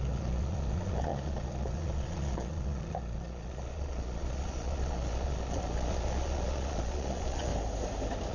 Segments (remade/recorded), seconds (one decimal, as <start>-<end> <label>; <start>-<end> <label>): 0.0-7.5 remade; 7.5-8.3 recorded